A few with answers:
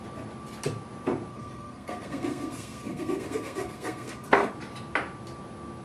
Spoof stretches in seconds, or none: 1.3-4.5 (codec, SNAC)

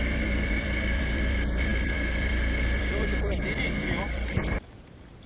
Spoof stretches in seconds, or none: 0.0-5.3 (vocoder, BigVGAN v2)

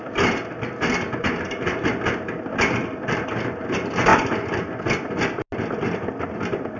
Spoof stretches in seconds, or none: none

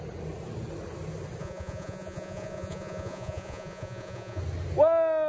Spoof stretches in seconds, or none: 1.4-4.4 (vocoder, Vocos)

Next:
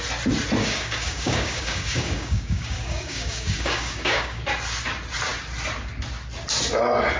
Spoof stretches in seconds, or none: 0.6-4.4 (codec, DAC)

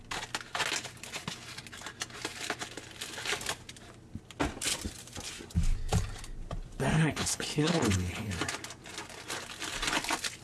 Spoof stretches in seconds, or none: 6.9-8.3 (codec, HILCodec)